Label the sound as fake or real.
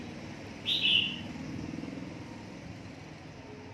real